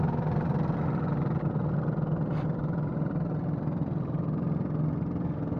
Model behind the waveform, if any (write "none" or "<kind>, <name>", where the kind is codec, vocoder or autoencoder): none